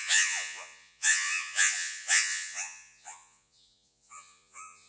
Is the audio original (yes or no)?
no